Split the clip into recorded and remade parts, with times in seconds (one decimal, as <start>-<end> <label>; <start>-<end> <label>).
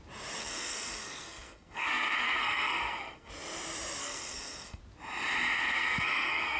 0.0-0.4 recorded; 0.4-3.3 remade; 3.3-4.0 recorded; 4.0-4.8 remade; 4.8-5.6 recorded; 5.6-6.6 remade